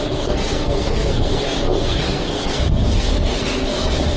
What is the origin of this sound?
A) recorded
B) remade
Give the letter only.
B